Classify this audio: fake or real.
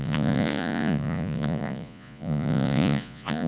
fake